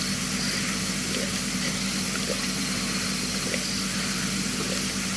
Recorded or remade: recorded